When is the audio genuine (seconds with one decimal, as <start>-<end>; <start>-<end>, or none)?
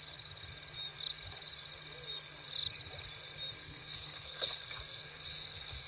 0.0-3.6